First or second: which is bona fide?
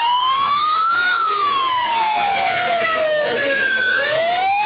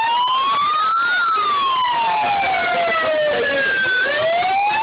second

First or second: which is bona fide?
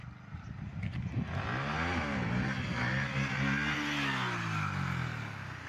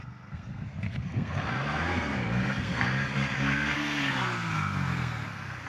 first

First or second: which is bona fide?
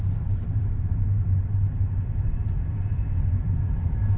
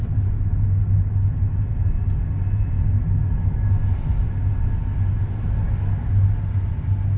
second